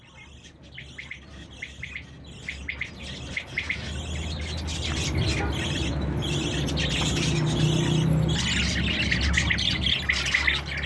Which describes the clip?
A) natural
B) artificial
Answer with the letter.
A